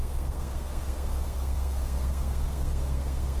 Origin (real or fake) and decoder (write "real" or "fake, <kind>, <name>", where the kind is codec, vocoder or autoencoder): fake, codec, SNAC